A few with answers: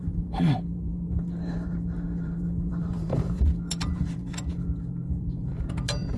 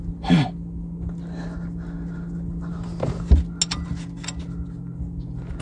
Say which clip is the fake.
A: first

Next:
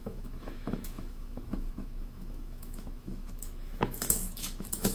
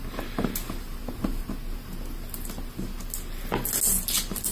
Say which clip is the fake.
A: first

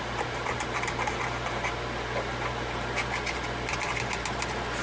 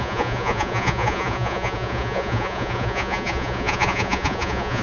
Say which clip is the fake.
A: second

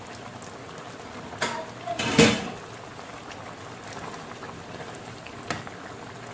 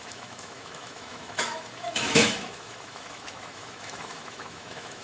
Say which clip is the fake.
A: second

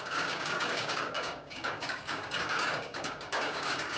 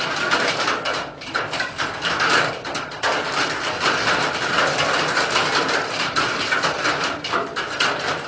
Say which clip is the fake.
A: first